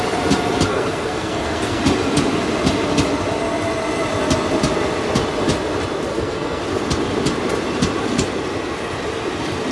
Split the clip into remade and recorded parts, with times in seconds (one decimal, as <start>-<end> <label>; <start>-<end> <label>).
0.0-0.7 recorded; 0.7-1.8 remade; 1.8-6.1 recorded; 6.1-6.6 remade; 6.6-9.7 recorded